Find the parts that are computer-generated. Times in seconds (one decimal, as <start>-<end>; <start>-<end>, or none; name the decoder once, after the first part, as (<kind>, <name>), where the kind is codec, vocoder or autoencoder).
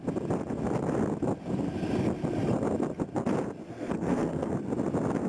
3.6-4.5 (codec, SNAC)